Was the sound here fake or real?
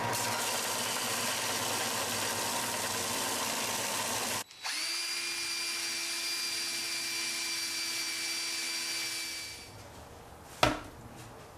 real